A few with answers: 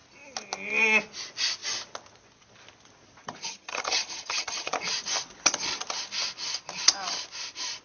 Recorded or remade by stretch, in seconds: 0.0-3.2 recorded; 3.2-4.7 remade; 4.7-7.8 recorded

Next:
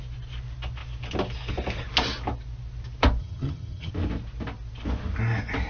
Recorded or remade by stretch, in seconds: 0.0-3.2 recorded; 3.2-3.9 remade; 3.9-5.7 recorded

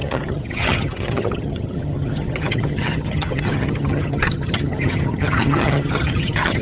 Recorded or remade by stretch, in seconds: 0.0-6.6 remade

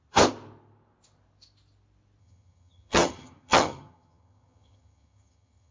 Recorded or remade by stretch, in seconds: 0.0-2.2 recorded; 2.2-5.7 remade

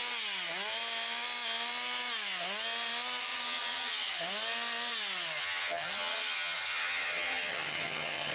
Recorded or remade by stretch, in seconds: 0.0-3.2 recorded; 3.2-4.2 remade; 4.2-5.4 recorded; 5.4-8.3 remade

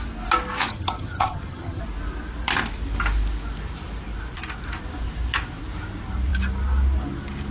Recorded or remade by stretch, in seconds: 0.0-0.7 recorded; 0.7-1.8 remade; 1.8-7.5 recorded

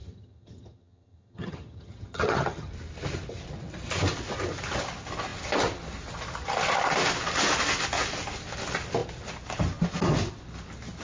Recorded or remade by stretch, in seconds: 0.0-2.7 remade; 2.7-11.0 recorded